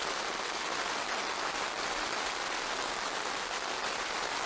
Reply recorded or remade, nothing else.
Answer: recorded